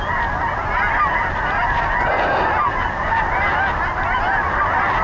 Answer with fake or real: real